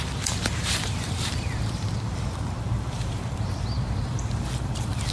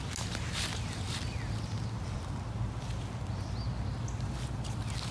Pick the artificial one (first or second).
first